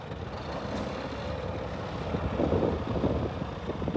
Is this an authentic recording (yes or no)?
yes